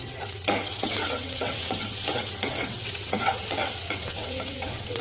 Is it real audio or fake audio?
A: fake